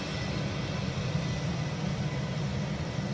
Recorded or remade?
recorded